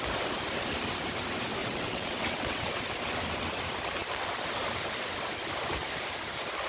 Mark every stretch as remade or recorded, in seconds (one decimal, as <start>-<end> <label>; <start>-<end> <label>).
0.0-1.6 recorded; 1.6-2.7 remade; 2.7-6.7 recorded